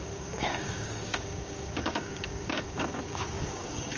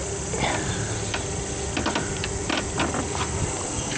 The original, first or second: second